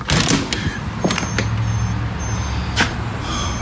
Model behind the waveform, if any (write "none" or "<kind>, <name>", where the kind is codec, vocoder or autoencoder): none